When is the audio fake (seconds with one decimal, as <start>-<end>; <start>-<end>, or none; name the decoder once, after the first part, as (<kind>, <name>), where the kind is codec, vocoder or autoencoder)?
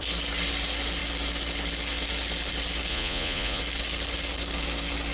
2.9-3.6 (vocoder, Vocos)